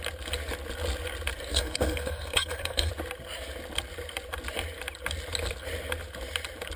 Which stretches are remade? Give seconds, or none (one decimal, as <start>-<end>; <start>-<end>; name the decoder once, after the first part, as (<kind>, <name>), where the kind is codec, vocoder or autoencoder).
1.5-2.9 (codec, SNAC)